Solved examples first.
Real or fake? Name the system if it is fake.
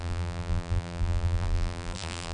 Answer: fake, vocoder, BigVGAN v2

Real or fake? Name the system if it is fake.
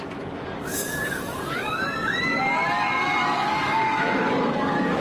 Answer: fake, codec, DAC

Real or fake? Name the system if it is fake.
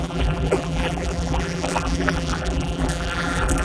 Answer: fake, vocoder, BigVGAN v2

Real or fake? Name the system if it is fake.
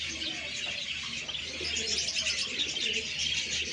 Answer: real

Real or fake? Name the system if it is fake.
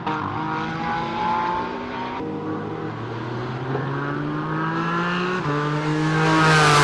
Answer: real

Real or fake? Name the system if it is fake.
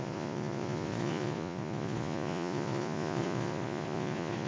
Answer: fake, vocoder, Vocos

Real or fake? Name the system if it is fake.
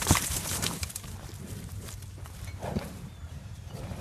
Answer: fake, vocoder, BigVGAN v2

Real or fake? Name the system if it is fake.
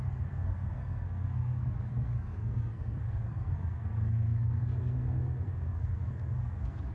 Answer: fake, codec, SNAC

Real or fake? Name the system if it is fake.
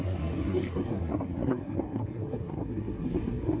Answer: fake, codec, SNAC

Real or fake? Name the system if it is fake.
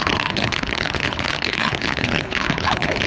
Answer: fake, codec, HILCodec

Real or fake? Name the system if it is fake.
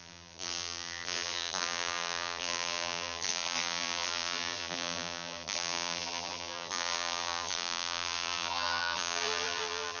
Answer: fake, vocoder, BigVGAN v2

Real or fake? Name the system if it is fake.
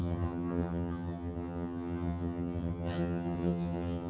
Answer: fake, vocoder, HiFi-GAN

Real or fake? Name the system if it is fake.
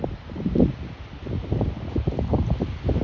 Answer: real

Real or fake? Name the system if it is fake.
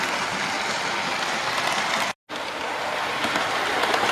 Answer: real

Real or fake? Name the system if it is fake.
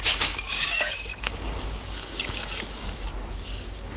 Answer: fake, codec, DAC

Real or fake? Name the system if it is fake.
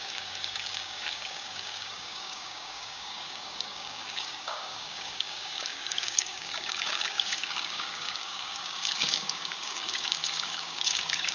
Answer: fake, codec, DAC